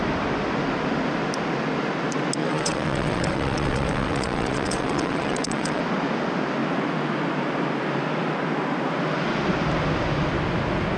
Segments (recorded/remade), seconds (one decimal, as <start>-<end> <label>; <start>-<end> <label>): 0.0-2.4 recorded; 2.4-5.8 remade; 5.8-11.0 recorded